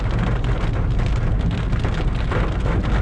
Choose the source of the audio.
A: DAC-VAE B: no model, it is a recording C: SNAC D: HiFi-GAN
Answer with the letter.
B